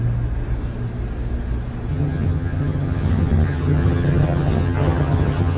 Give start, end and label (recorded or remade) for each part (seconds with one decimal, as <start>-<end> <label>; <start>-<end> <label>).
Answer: 0.0-1.9 recorded; 1.9-5.6 remade